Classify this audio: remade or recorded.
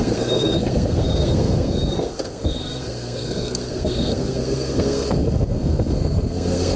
remade